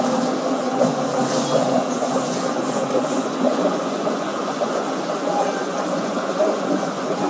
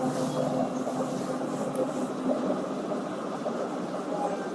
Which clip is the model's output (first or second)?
first